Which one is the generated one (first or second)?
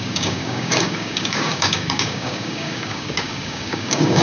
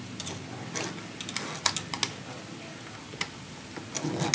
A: first